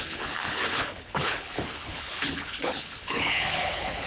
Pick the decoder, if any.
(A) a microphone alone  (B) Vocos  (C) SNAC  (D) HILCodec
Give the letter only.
D